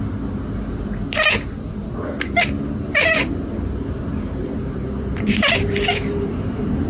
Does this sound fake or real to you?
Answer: real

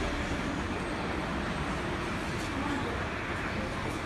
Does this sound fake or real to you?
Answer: real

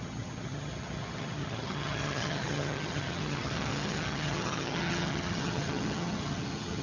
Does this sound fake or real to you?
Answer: fake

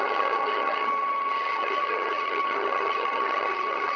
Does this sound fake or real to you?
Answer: fake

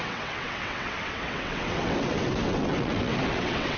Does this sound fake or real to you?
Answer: fake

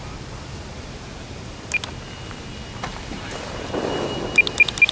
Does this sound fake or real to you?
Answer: real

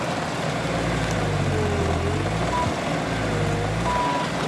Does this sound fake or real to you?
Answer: real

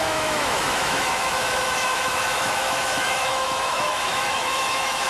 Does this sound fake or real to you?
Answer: fake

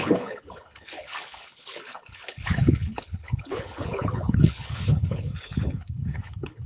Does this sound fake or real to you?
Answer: fake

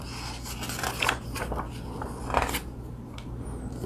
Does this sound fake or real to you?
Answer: real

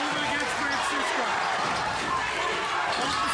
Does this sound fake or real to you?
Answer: real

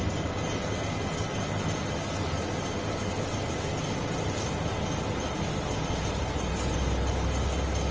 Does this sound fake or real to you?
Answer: real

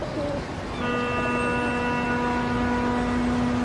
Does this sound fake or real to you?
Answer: real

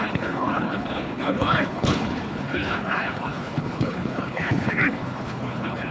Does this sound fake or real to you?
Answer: fake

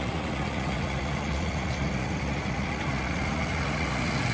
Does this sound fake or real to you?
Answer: fake